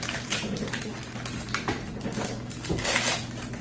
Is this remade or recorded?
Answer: recorded